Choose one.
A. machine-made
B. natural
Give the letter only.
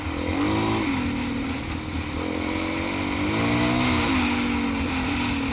B